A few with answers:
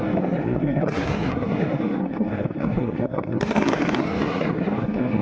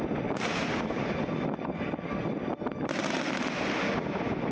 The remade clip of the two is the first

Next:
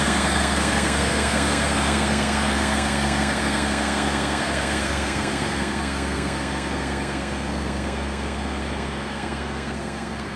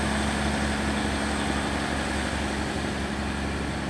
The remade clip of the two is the first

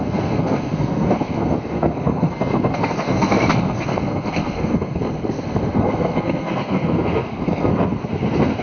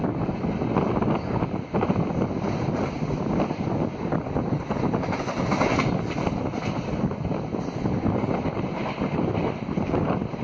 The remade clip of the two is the first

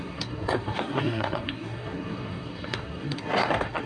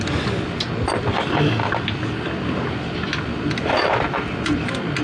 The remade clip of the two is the first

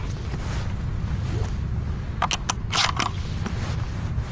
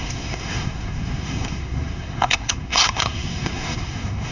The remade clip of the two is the second